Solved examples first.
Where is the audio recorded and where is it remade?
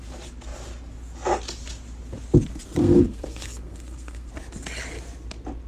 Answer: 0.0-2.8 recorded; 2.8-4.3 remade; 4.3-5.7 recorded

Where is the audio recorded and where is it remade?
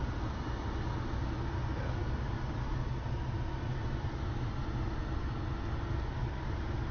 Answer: 0.0-6.9 recorded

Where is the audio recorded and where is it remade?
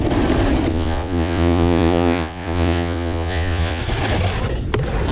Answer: 0.0-0.7 recorded; 0.7-3.8 remade; 3.8-5.1 recorded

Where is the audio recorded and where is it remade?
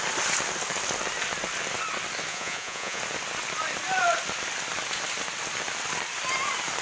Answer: 0.0-2.3 recorded; 2.3-3.0 remade; 3.0-6.8 recorded